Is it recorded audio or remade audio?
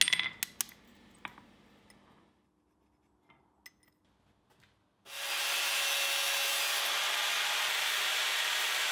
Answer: recorded